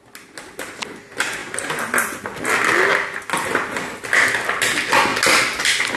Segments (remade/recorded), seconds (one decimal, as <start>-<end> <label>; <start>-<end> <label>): 0.0-6.0 recorded